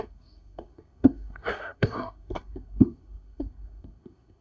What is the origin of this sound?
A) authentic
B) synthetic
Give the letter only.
B